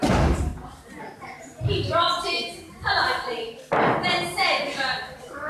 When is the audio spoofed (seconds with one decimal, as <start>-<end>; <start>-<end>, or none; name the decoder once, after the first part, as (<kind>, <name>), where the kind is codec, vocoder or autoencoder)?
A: none